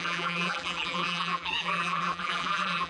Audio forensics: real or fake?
fake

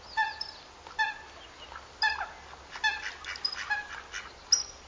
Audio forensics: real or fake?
real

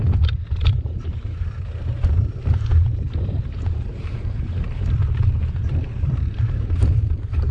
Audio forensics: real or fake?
fake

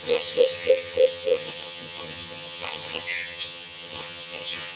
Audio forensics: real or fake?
fake